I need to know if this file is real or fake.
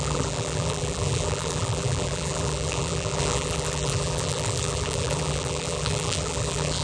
fake